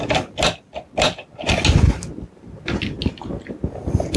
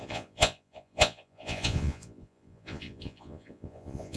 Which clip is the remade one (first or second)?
second